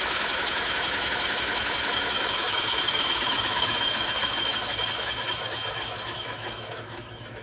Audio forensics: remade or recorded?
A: remade